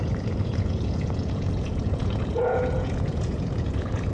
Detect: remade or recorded remade